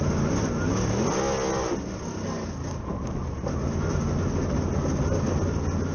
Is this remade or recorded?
recorded